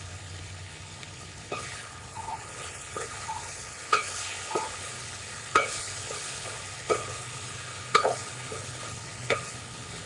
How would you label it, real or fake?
fake